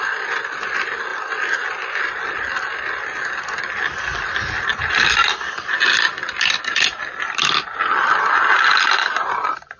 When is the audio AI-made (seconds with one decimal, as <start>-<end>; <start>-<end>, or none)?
0.0-1.1; 3.6-5.2; 6.4-9.8

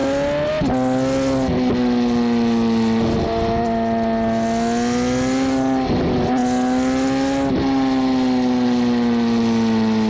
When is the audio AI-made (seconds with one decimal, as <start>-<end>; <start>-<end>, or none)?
none

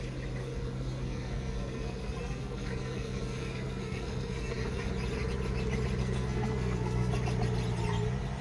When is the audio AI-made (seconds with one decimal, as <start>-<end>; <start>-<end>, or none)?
0.4-4.9; 6.0-7.1

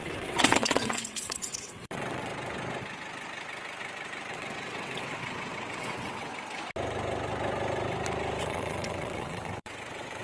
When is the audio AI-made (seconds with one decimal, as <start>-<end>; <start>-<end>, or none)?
0.0-2.3; 4.3-6.3; 8.4-10.2

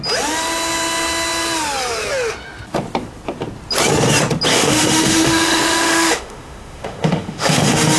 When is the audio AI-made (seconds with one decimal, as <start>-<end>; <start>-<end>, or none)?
4.5-8.0

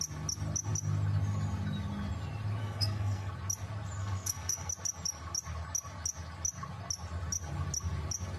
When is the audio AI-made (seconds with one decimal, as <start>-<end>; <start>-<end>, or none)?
2.6-3.3; 4.0-4.7